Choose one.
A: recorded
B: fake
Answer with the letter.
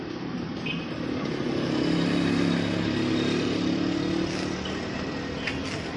A